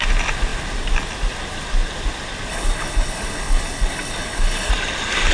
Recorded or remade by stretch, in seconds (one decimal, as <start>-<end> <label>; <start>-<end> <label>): 0.0-2.5 recorded; 2.5-4.7 remade; 4.7-5.3 recorded